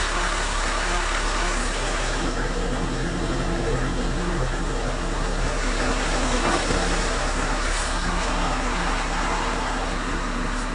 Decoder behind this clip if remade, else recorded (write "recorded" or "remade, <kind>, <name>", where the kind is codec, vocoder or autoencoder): remade, codec, SNAC